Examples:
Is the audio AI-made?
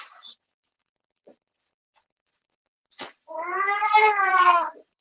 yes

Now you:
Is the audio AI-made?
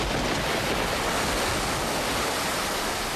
no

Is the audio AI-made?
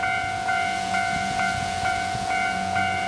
yes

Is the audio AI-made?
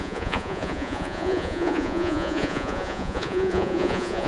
yes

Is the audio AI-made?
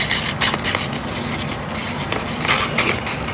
no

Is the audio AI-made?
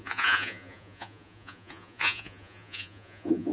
yes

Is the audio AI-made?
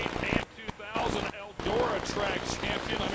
no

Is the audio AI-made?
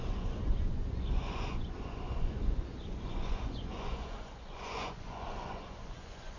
yes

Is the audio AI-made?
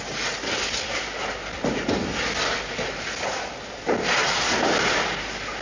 no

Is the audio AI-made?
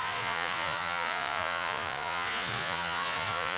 yes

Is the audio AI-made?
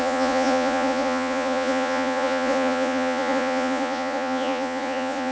yes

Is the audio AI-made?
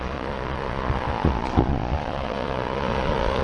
yes